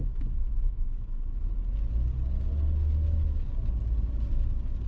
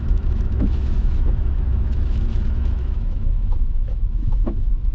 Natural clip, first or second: first